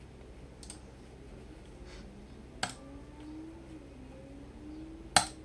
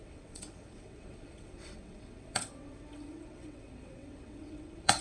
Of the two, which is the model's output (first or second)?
second